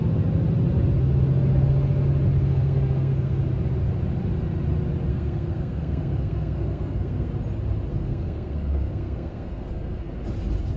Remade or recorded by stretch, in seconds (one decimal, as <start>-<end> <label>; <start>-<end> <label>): 0.0-2.4 recorded; 2.4-3.4 remade; 3.4-5.1 recorded; 5.1-7.3 remade; 7.3-7.9 recorded; 7.9-10.1 remade; 10.1-10.8 recorded